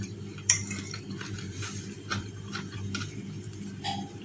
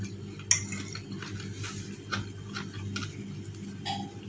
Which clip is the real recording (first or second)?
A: second